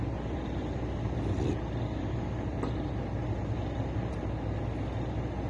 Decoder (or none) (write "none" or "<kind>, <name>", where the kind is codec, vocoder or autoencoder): none